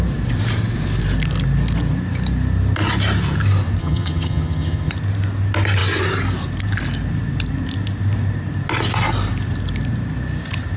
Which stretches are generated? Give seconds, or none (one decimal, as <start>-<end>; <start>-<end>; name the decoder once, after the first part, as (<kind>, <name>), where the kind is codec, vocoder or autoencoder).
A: 3.8-4.9 (vocoder, HiFi-GAN)